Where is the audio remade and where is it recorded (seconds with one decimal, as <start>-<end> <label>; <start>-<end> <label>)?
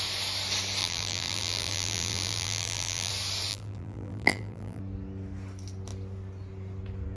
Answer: 0.0-0.8 recorded; 0.8-3.1 remade; 3.1-3.5 recorded; 3.5-4.8 remade; 4.8-7.2 recorded